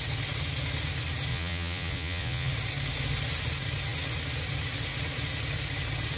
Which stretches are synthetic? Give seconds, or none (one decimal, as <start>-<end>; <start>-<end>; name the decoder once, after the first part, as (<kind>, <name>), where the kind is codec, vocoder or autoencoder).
1.3-2.5 (vocoder, Vocos)